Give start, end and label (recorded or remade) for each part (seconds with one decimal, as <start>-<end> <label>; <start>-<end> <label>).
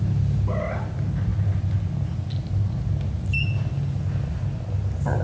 0.0-5.2 recorded